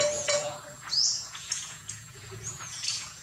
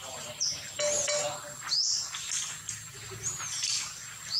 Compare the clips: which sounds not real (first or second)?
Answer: first